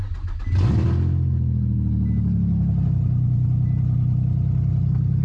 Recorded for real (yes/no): yes